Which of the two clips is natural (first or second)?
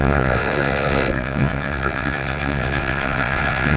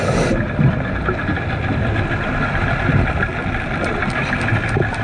second